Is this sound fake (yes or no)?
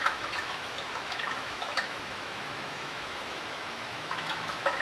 yes